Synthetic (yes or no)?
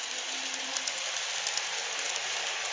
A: no